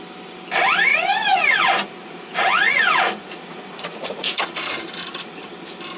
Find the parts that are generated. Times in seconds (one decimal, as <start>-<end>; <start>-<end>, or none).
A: 0.9-1.6; 2.0-5.5